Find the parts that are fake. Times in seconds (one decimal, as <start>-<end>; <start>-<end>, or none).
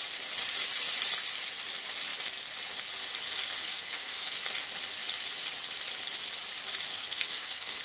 3.6-4.4; 6.9-7.8